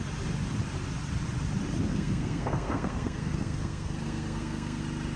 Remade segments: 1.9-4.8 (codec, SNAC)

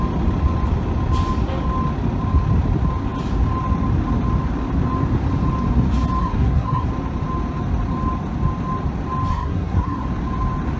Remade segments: 6.2-6.9 (codec, SNAC); 9.3-10.1

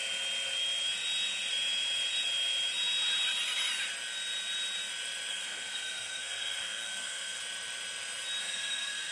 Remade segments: 5.3-7.4 (codec, SNAC); 8.4-9.1

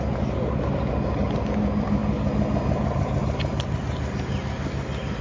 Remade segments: none

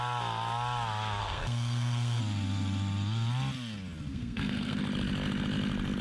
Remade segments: 1.2-2.2 (codec, SNAC); 4.1-4.8